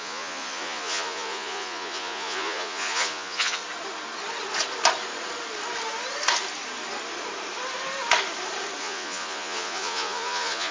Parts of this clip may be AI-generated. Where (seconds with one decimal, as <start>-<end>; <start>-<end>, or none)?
0.0-3.6; 8.8-10.7